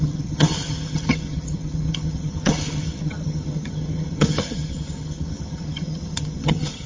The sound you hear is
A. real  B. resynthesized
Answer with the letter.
B